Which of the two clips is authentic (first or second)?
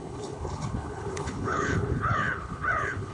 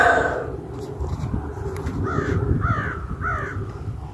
second